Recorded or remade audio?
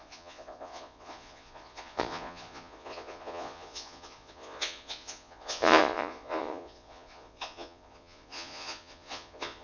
remade